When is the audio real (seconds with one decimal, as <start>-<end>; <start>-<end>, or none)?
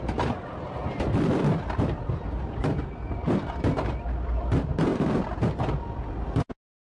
0.0-0.8; 3.6-4.9; 5.5-6.8